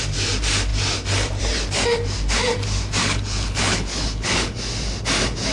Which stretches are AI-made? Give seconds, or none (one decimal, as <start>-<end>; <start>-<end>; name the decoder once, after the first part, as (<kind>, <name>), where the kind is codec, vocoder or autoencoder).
3.0-4.6 (codec, HILCodec)